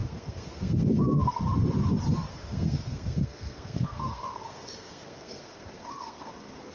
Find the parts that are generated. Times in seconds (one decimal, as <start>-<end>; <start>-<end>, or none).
0.0-1.4; 2.3-6.3

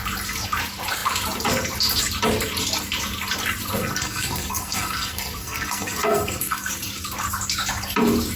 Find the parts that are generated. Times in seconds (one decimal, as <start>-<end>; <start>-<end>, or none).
3.8-6.7

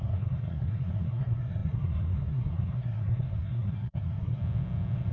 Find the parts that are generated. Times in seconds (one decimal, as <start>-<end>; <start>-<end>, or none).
0.0-4.4

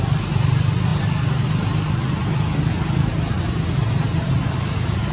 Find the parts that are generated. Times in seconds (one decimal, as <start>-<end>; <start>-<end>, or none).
none

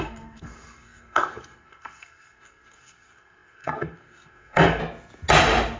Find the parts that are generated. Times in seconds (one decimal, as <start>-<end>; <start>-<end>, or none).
0.0-4.8